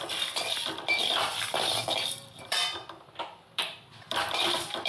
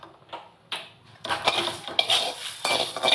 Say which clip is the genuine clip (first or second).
second